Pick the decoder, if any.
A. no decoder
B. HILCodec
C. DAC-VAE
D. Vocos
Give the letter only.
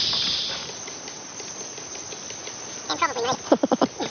A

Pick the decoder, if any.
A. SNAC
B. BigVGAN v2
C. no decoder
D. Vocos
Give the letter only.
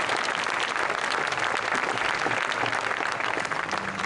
C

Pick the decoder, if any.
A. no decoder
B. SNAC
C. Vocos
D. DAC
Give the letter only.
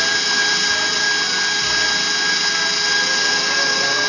A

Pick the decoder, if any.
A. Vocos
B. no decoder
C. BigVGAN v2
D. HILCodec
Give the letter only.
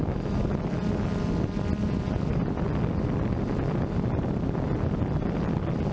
B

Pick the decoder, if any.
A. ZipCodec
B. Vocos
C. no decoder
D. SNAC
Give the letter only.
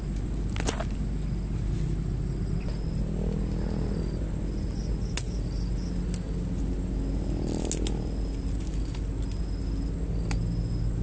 C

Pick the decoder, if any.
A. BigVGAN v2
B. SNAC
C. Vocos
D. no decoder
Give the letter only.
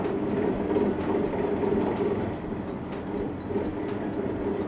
D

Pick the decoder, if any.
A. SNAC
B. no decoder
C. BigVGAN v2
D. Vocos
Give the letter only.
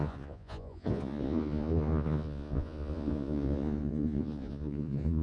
D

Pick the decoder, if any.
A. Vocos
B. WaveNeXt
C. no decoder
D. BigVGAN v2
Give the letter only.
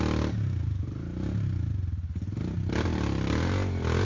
C